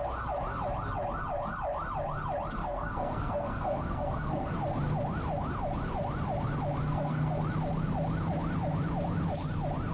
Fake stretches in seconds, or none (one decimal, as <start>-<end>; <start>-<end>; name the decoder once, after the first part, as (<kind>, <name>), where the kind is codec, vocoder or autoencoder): 2.6-4.5 (codec, SNAC); 6.9-7.4